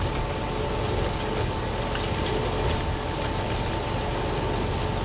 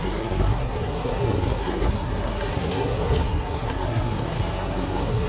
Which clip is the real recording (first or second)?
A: first